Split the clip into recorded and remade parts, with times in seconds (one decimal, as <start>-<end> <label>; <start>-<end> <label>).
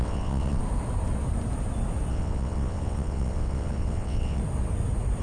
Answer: 0.0-0.6 remade; 0.6-2.1 recorded; 2.1-4.4 remade; 4.4-5.2 recorded